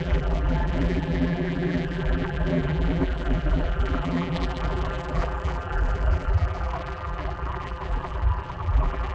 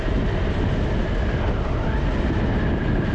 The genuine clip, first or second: second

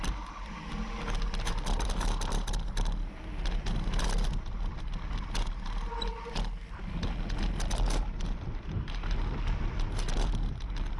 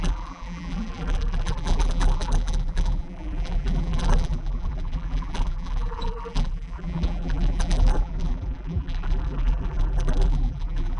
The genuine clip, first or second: first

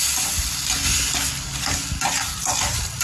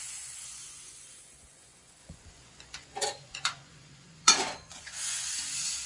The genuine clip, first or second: first